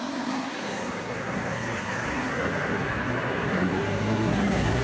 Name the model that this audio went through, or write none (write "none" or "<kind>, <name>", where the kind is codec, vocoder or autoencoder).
codec, SNAC